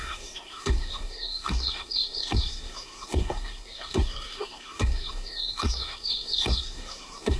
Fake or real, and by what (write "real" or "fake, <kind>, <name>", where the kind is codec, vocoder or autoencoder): fake, codec, SNAC